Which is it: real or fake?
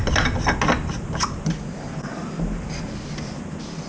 real